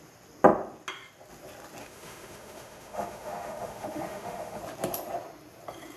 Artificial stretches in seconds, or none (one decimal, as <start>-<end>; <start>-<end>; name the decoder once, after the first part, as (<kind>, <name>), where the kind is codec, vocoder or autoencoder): 1.8-4.6 (autoencoder, DAC-VAE)